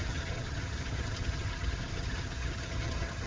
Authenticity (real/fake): fake